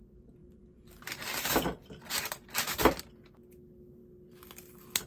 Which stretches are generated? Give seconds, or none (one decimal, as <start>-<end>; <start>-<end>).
none